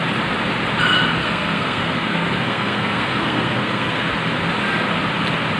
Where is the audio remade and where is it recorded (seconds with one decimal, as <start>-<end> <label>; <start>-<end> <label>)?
0.0-1.2 recorded; 1.2-4.1 remade; 4.1-5.6 recorded